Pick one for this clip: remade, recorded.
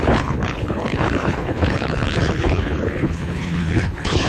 remade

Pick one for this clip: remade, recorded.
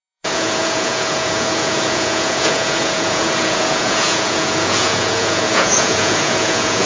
remade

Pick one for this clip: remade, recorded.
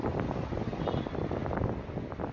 recorded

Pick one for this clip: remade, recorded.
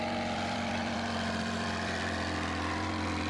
remade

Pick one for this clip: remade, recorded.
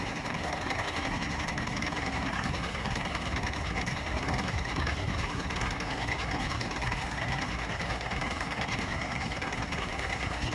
remade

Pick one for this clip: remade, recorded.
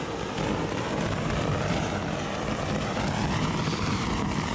recorded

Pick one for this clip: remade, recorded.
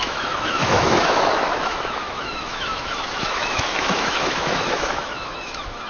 remade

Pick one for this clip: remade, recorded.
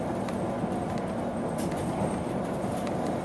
recorded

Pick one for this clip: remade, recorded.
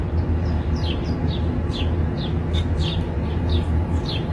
recorded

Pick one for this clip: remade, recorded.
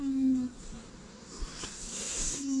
remade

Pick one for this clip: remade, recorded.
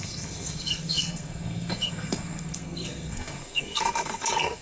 remade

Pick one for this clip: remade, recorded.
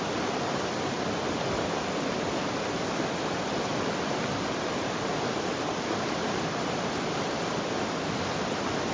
recorded